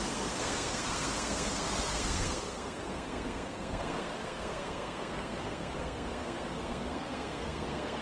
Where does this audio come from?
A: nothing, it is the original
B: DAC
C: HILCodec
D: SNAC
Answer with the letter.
D